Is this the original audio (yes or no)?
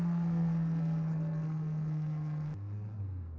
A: no